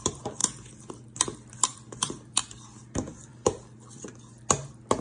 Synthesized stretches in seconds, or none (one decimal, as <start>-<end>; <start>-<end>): 0.4-0.9; 1.7-4.0